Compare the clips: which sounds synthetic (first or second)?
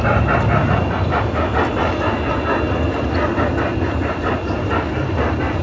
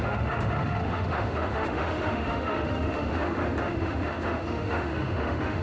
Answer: second